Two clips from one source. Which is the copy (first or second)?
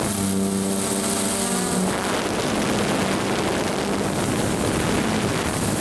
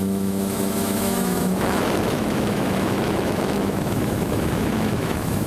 second